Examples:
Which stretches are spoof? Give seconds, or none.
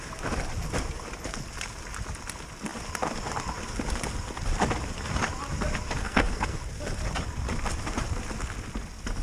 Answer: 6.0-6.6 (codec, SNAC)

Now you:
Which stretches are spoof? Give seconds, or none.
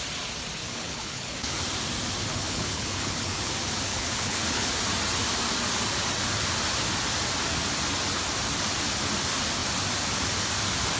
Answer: 0.6-1.6 (codec, HILCodec); 2.3-3.5; 3.9-4.7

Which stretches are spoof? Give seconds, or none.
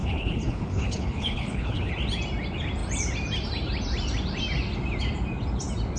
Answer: 0.0-1.9 (codec, HILCodec)